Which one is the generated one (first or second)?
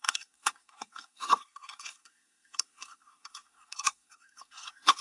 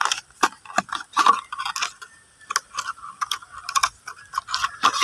first